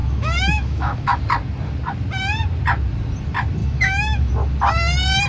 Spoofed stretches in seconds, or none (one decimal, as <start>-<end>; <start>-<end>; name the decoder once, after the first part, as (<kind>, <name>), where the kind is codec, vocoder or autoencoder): 0.0-1.2 (autoencoder, DAC-VAE); 3.6-4.3